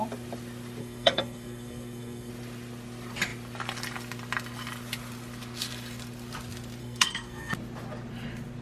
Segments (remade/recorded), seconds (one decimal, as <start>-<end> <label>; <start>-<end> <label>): 0.0-0.8 recorded; 0.8-2.3 remade; 2.3-6.8 recorded; 6.8-7.5 remade; 7.5-8.6 recorded

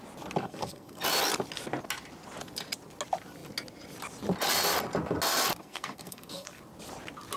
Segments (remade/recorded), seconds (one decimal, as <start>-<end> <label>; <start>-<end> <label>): 0.0-0.4 recorded; 0.4-1.0 remade; 1.0-5.6 recorded; 5.6-6.6 remade; 6.6-7.4 recorded